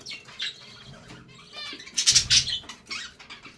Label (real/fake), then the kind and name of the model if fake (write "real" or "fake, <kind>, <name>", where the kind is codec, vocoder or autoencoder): real